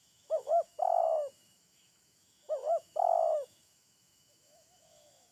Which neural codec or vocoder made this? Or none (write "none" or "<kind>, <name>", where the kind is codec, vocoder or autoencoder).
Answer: autoencoder, DAC-VAE